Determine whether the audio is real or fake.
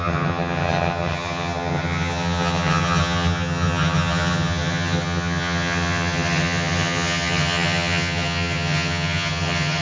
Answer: fake